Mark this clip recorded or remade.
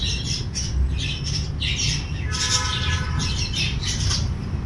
recorded